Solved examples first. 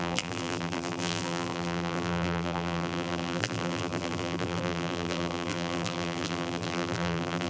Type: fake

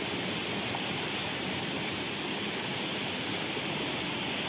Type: real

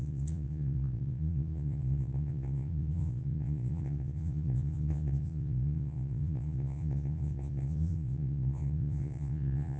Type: fake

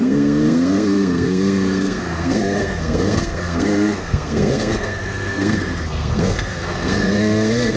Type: fake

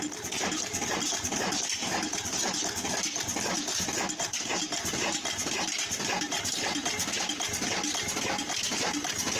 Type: fake